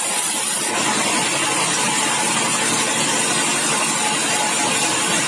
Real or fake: real